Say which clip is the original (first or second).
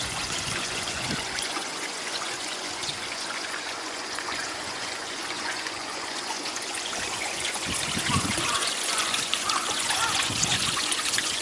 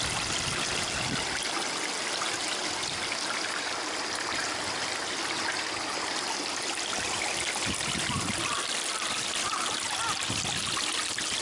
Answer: second